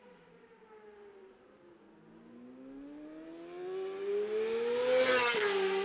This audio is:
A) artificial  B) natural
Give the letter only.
B